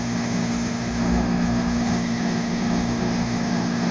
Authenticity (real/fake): fake